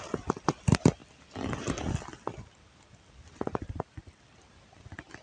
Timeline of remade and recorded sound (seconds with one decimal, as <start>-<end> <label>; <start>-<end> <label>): 0.0-5.2 recorded